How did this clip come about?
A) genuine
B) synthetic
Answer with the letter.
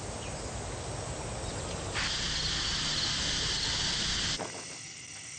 A